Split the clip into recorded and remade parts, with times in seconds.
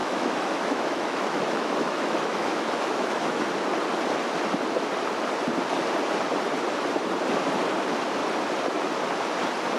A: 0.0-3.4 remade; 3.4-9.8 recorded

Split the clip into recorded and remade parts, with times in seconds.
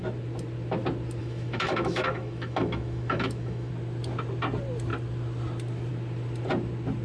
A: 0.0-1.2 recorded; 1.2-3.7 remade; 3.7-7.0 recorded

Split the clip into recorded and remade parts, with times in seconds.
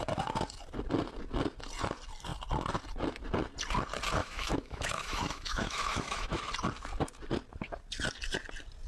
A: 0.0-4.2 recorded; 4.2-6.4 remade; 6.4-8.9 recorded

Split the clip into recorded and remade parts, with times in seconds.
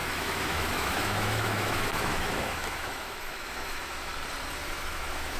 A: 0.0-4.1 remade; 4.1-4.7 recorded; 4.7-5.4 remade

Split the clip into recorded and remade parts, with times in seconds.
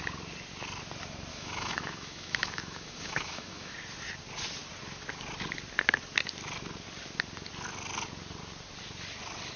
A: 0.0-1.3 recorded; 1.3-3.7 remade; 3.7-9.6 recorded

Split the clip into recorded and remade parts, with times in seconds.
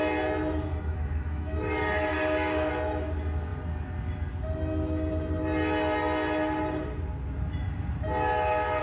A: 0.0-0.7 recorded; 0.7-2.7 remade; 2.7-8.8 recorded